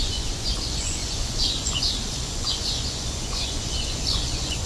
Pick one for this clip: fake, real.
fake